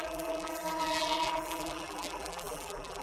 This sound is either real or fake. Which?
fake